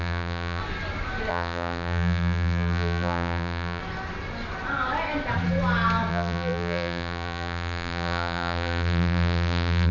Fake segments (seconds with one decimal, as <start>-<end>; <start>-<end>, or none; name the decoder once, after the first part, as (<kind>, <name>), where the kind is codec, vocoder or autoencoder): 0.0-0.6 (vocoder, BigVGAN v2); 1.3-3.8; 6.1-9.9